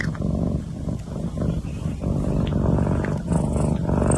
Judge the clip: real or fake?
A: real